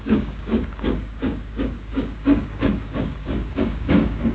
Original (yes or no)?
no